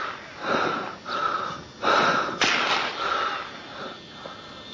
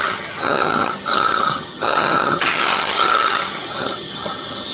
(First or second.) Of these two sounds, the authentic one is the first